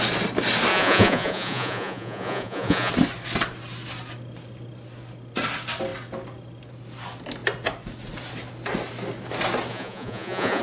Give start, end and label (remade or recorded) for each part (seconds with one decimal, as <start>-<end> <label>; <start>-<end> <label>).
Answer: 0.0-0.7 recorded; 0.7-2.9 remade; 2.9-9.7 recorded; 9.7-10.6 remade

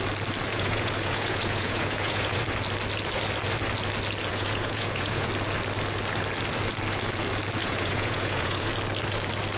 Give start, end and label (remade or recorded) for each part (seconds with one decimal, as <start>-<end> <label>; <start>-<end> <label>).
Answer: 0.0-0.5 recorded; 0.5-2.4 remade; 2.4-4.3 recorded; 4.3-5.3 remade; 5.3-7.6 recorded; 7.6-8.7 remade; 8.7-9.6 recorded

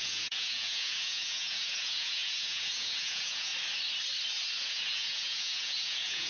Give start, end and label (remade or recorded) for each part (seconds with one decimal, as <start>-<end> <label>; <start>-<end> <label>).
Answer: 0.0-3.5 remade; 3.5-4.7 recorded; 4.7-6.3 remade

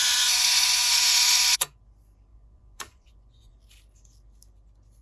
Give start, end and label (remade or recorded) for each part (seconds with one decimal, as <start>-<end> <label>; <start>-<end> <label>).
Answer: 0.0-1.8 remade; 1.8-2.3 recorded; 2.3-3.5 remade; 3.5-5.0 recorded